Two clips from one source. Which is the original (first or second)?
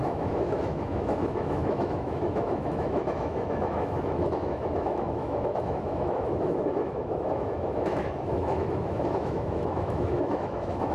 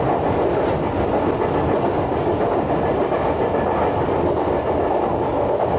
second